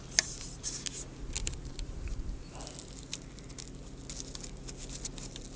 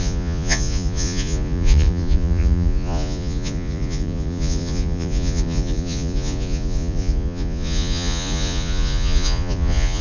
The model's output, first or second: second